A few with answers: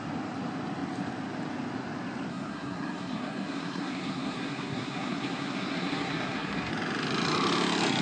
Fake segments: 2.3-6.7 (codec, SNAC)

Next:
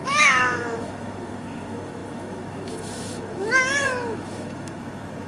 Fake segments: 0.0-5.3 (autoencoder, DAC-VAE)